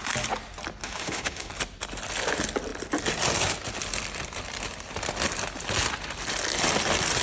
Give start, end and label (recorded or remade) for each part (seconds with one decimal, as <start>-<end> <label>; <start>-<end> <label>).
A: 0.0-0.8 recorded; 0.8-1.5 remade; 1.5-7.2 recorded